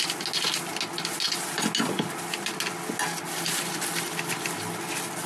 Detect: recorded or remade recorded